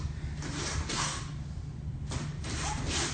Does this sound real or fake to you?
real